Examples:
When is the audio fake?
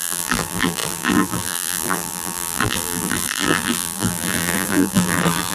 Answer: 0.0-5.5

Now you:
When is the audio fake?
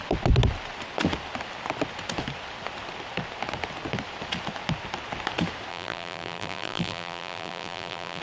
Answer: 5.7-8.2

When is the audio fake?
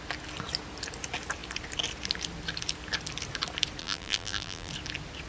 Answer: 3.8-4.7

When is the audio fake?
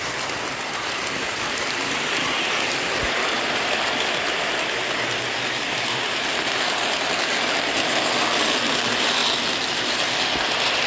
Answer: 0.0-9.2; 9.8-10.9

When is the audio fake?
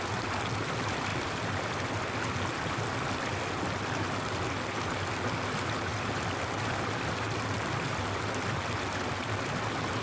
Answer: none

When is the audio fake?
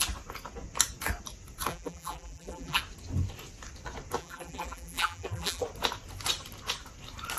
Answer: 1.7-2.8; 4.2-5.6